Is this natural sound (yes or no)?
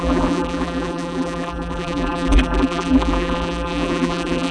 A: no